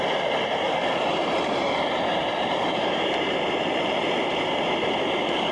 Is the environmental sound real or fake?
fake